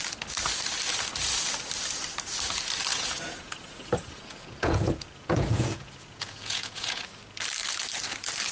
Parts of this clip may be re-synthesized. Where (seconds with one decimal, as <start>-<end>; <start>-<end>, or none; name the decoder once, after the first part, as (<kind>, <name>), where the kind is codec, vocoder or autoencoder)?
2.9-7.0 (vocoder, Vocos)